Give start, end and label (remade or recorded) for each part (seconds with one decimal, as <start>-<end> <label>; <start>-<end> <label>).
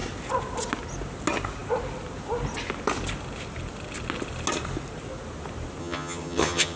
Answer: 0.0-5.8 recorded; 5.8-6.8 remade